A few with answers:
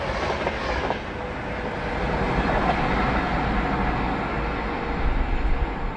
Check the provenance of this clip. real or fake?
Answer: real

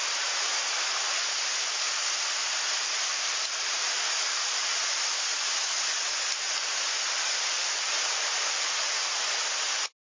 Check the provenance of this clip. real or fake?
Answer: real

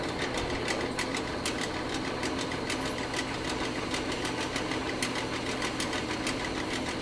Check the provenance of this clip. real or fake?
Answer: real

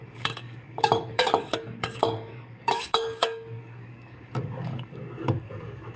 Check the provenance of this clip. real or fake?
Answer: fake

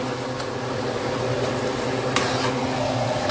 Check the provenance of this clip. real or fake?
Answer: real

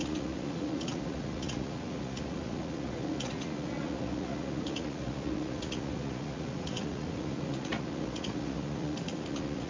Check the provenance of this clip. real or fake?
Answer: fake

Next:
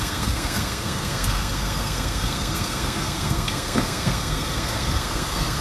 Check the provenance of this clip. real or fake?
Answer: fake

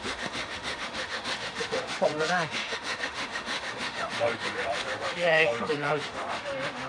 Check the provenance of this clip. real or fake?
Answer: fake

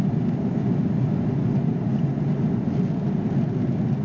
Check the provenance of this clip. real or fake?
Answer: real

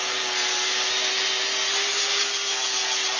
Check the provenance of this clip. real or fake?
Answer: real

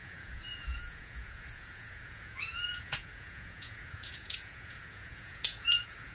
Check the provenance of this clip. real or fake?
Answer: fake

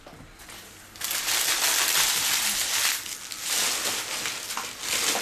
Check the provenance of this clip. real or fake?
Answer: real